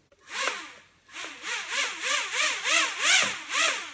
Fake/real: real